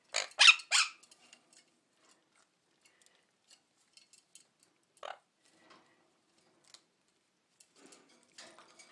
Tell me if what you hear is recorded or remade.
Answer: recorded